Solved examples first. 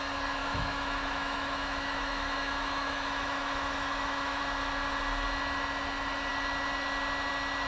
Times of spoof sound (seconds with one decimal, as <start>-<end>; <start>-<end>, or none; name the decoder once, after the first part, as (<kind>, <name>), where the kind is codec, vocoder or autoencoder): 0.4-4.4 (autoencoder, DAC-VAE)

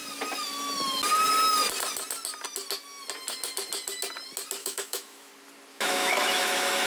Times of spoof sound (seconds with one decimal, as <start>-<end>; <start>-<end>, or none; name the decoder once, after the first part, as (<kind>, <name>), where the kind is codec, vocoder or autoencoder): 4.6-5.3 (autoencoder, DAC-VAE); 5.7-6.9

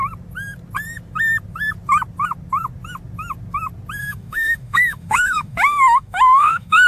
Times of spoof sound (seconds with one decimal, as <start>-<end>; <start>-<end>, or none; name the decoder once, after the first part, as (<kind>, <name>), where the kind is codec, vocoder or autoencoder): 4.0-6.9 (autoencoder, DAC-VAE)

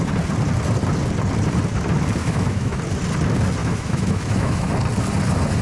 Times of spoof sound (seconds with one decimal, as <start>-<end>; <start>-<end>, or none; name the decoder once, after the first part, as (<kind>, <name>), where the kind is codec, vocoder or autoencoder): 2.2-2.8 (autoencoder, DAC-VAE); 3.6-4.7

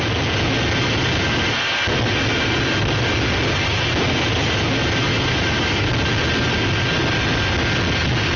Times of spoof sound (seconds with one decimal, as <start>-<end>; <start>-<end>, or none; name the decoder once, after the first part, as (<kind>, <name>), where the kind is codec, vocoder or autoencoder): 5.1-5.9 (autoencoder, DAC-VAE)